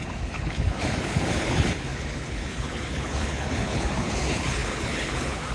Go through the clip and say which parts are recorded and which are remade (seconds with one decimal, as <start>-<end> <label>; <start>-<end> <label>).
0.0-5.5 remade